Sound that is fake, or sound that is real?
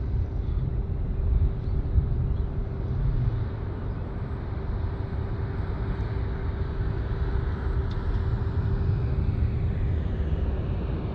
real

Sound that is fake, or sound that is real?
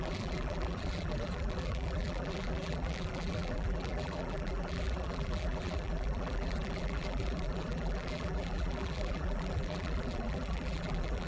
fake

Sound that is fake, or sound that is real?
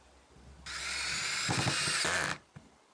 real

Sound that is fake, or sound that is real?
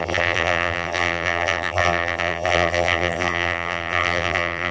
fake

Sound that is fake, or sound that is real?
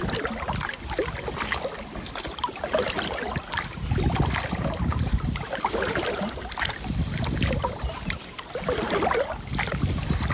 real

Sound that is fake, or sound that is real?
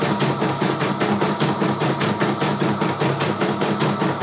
real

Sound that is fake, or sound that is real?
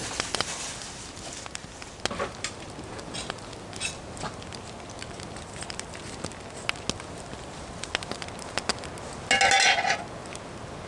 real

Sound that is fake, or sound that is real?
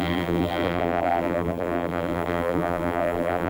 fake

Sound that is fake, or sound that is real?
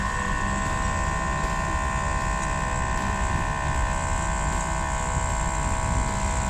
real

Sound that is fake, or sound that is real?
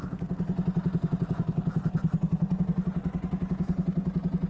real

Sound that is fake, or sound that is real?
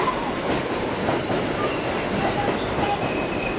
fake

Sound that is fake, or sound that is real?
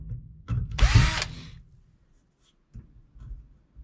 real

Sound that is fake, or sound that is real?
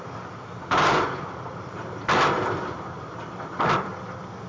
fake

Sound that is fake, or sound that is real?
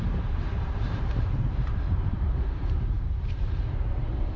fake